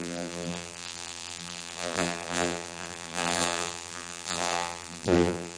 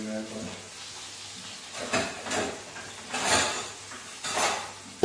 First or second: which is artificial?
first